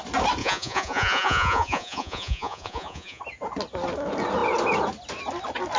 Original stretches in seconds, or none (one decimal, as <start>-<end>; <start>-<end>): 0.0-0.4; 3.2-5.8